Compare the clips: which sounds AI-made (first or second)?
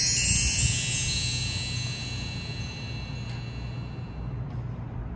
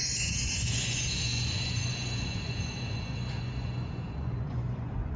second